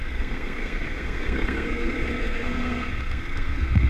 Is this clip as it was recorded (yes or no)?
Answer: no